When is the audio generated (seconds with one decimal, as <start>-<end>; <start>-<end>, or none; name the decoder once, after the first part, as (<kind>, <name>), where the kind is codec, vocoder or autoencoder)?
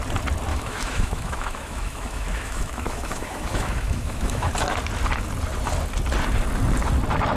0.5-4.5 (autoencoder, DAC-VAE)